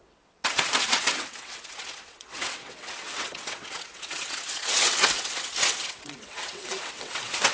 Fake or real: fake